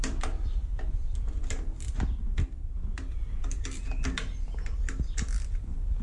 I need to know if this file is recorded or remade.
recorded